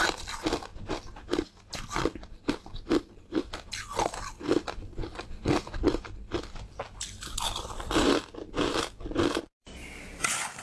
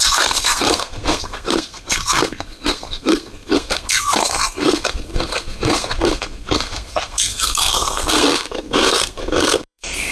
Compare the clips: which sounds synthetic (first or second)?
second